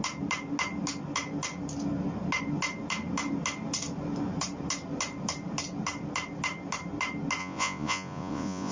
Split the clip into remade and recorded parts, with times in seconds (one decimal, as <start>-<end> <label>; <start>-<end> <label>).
0.0-7.4 recorded; 7.4-8.7 remade